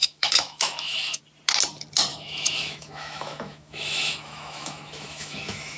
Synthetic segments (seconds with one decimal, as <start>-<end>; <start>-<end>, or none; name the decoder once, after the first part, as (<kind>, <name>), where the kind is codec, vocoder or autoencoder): 0.0-1.2 (autoencoder, DAC-VAE); 2.1-5.8